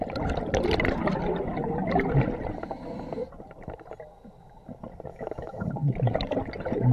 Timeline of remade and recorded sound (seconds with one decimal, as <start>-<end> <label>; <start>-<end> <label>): 0.0-5.1 recorded; 5.1-5.7 remade; 5.7-6.9 recorded